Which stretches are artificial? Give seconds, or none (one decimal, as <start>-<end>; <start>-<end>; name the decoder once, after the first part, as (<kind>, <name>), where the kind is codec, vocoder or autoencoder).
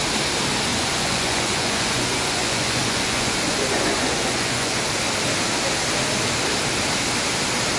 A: 0.7-4.8 (vocoder, Vocos)